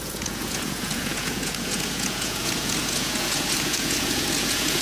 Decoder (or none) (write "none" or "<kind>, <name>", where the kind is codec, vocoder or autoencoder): vocoder, Vocos